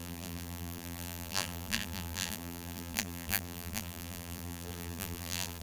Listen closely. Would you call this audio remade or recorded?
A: remade